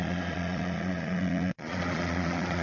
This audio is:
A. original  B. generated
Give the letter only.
B